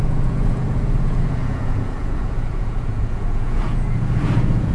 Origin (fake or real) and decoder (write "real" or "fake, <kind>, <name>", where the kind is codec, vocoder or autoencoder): fake, vocoder, Vocos